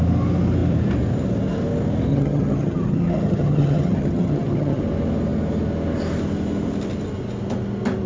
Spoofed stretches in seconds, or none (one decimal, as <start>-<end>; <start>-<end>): 2.1-4.8